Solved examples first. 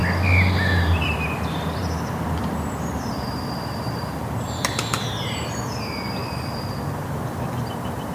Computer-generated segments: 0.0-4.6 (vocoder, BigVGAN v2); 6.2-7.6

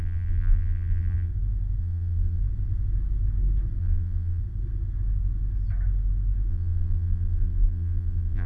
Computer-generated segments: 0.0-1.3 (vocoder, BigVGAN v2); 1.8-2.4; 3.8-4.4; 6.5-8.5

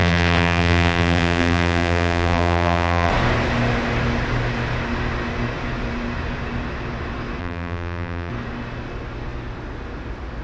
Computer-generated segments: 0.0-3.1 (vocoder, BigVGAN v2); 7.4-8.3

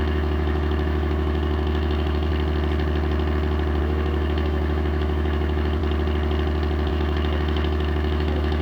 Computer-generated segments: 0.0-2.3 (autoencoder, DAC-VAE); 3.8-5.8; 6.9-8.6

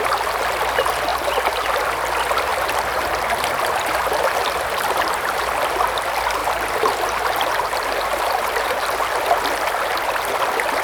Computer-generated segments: 1.1-1.7 (vocoder, BigVGAN v2); 6.4-9.0